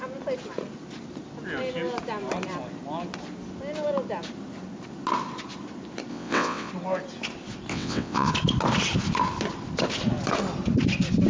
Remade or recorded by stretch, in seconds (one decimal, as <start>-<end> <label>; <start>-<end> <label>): 0.0-6.1 recorded; 6.1-6.7 remade; 6.7-7.7 recorded; 7.7-8.3 remade; 8.3-11.3 recorded